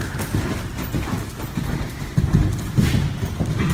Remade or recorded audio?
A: recorded